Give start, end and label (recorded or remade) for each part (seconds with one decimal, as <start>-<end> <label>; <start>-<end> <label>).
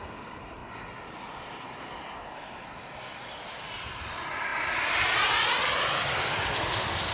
0.0-4.5 remade; 4.5-5.6 recorded; 5.6-7.1 remade